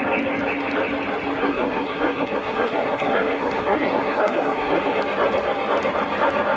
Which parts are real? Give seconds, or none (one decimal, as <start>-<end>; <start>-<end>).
0.0-1.4; 5.0-6.6